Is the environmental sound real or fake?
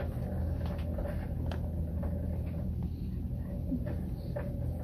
real